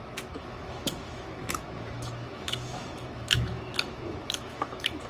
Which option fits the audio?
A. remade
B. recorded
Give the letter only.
A